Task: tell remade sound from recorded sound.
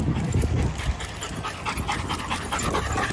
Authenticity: recorded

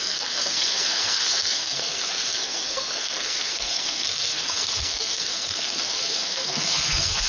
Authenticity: remade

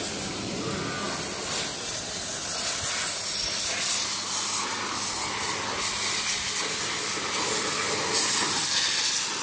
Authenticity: recorded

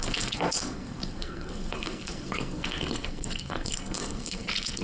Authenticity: remade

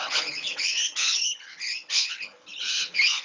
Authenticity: remade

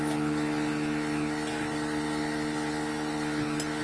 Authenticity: recorded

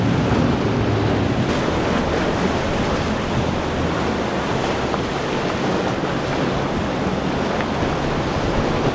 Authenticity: recorded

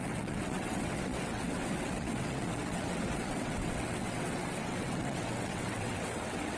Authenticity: remade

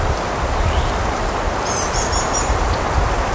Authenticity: remade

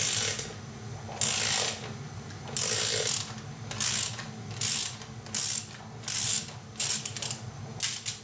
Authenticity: recorded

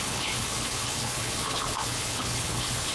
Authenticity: remade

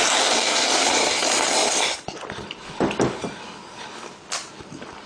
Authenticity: recorded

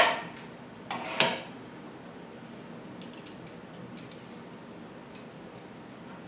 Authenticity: recorded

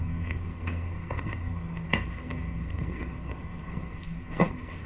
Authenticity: remade